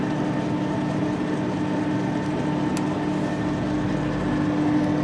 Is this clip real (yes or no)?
yes